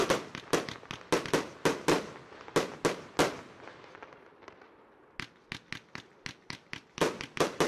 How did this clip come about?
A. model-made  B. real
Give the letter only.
B